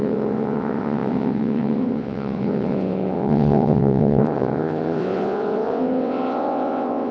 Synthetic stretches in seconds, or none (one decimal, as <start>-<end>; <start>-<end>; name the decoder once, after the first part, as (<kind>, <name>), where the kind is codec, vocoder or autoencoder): 0.0-7.1 (vocoder, WaveNeXt)